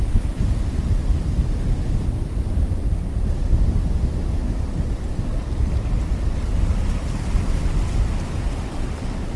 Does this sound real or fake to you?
real